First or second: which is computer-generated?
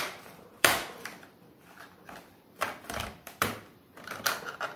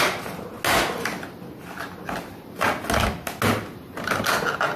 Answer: first